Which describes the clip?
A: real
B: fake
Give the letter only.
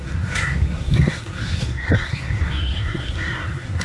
B